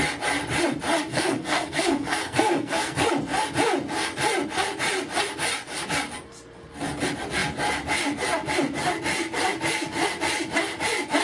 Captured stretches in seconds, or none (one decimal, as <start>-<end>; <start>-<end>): 0.0-1.1; 3.1-11.2